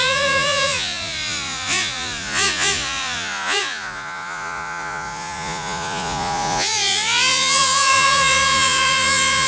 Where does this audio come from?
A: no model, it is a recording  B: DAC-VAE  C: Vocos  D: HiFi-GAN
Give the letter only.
C